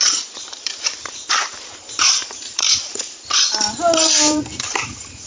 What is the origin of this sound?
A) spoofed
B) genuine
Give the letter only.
A